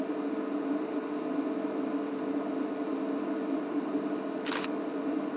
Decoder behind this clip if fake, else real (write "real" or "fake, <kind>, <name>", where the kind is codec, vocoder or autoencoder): real